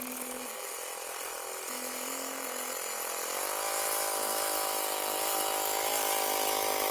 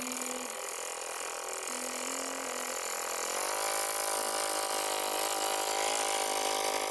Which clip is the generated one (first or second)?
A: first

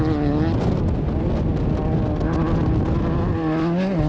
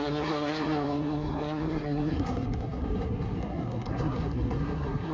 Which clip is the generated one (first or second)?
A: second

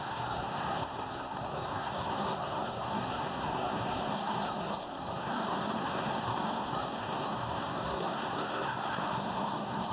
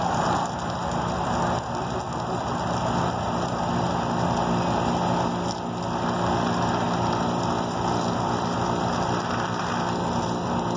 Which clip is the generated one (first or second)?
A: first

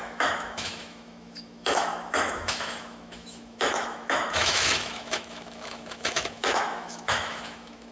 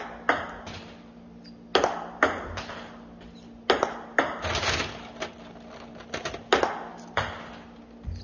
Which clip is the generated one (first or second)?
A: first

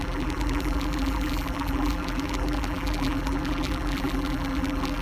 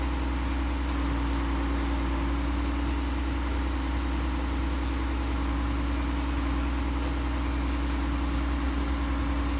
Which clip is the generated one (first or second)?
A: first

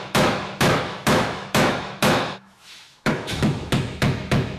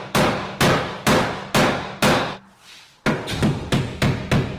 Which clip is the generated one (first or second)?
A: first